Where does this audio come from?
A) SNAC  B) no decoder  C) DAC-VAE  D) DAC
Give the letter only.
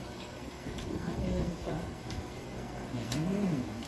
A